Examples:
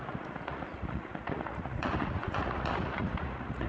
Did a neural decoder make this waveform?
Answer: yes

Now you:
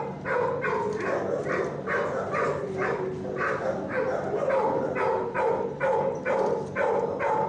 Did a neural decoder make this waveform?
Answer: no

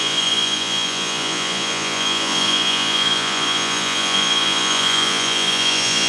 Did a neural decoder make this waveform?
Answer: yes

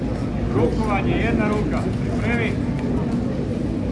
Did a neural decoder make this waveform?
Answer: no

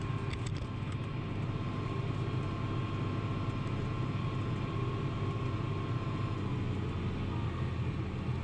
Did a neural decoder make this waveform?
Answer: no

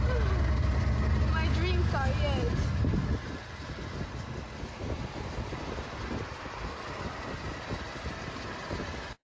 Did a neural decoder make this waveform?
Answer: no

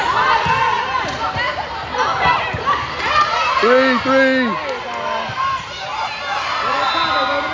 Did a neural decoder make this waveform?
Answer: no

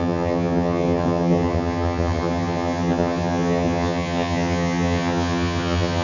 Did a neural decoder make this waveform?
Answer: yes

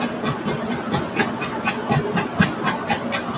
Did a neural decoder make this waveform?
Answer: no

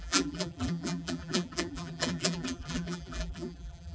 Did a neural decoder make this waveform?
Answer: yes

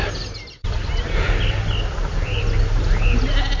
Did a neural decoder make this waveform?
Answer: no